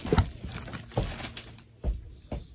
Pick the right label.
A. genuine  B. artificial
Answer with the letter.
A